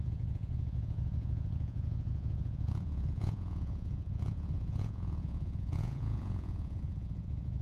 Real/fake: fake